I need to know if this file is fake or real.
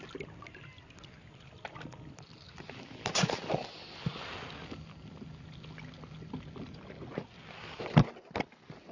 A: real